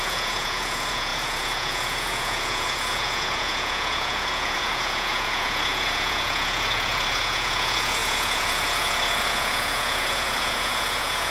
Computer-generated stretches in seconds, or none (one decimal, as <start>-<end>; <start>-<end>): 0.0-11.3